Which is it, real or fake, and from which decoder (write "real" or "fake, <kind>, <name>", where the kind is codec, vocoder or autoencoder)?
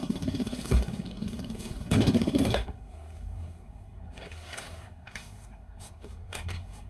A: fake, codec, SNAC